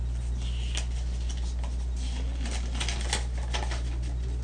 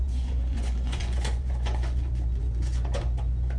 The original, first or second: first